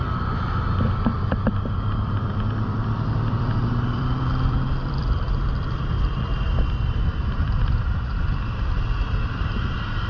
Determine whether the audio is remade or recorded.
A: remade